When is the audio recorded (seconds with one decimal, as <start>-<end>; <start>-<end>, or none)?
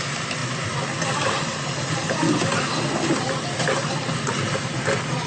0.0-5.3